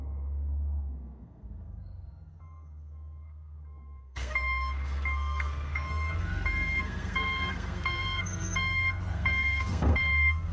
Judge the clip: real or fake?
fake